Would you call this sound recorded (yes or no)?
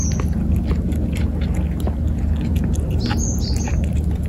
yes